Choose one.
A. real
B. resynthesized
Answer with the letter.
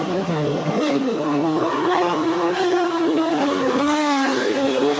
B